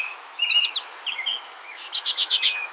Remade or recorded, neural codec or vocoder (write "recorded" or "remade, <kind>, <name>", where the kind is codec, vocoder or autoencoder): remade, autoencoder, DAC-VAE